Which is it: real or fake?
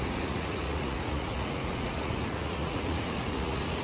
fake